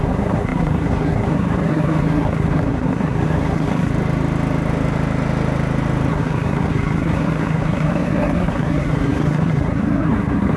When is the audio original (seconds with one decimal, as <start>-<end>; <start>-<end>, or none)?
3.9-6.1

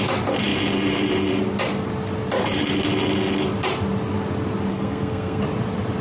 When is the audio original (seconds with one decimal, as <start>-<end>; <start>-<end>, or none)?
0.0-4.7; 5.4-6.0

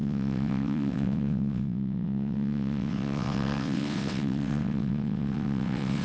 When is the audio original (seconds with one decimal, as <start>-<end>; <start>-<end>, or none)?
none

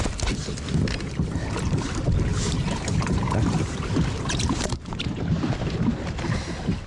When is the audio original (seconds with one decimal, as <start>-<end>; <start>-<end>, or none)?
0.0-2.3; 5.7-6.9